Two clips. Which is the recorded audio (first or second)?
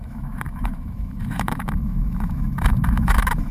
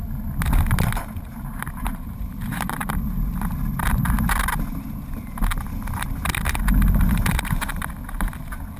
second